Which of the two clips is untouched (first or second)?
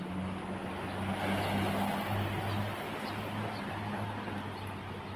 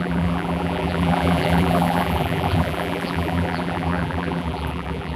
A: first